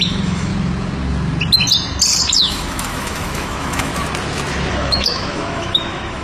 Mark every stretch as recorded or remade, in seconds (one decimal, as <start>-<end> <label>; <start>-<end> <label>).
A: 0.0-0.5 remade; 0.5-2.4 recorded; 2.4-3.9 remade; 3.9-4.7 recorded; 4.7-6.2 remade